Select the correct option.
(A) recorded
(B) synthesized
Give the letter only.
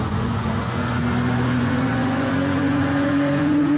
B